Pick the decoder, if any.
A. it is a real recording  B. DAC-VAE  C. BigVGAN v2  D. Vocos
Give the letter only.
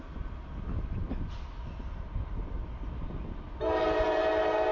A